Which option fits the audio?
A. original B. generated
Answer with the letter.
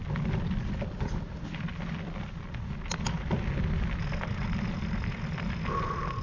A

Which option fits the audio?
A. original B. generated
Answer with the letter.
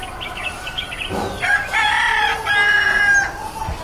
A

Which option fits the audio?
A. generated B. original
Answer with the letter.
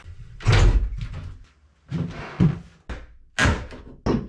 B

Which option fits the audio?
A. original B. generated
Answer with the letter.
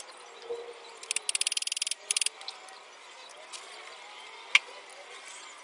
A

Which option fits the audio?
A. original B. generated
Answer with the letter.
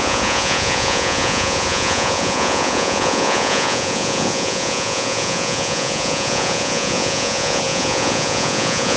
B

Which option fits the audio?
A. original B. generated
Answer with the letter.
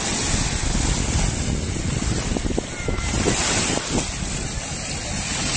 A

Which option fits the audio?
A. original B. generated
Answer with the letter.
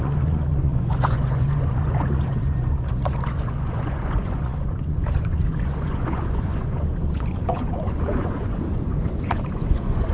B